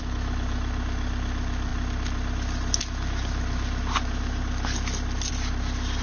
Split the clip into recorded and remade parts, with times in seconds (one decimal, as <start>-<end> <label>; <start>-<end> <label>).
0.0-6.0 recorded